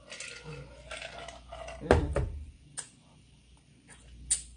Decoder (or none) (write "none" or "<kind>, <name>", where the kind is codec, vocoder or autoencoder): none